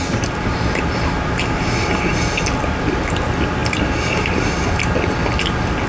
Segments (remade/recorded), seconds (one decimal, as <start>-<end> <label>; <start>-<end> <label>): 0.0-5.9 recorded